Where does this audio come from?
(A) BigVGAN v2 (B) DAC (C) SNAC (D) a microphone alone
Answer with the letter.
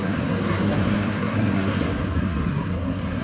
C